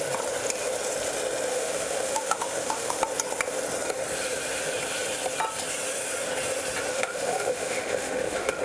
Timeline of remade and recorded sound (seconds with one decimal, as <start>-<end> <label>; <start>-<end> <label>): 0.0-1.5 recorded; 1.5-3.0 remade; 3.0-6.9 recorded; 6.9-8.6 remade